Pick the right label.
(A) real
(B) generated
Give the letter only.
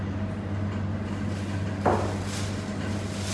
A